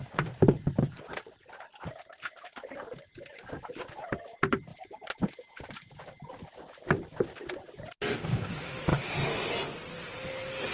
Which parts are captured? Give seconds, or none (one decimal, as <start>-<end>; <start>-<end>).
0.0-10.7